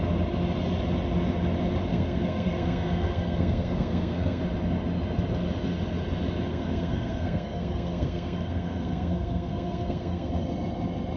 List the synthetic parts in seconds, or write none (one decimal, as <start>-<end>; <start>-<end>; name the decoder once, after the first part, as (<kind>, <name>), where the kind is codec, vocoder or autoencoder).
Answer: 1.9-4.4 (codec, SNAC); 6.5-10.3